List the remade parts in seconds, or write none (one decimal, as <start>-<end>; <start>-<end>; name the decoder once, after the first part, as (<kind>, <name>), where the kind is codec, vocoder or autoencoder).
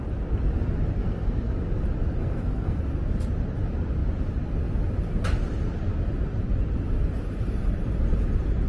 1.0-1.8 (codec, SNAC); 2.2-2.8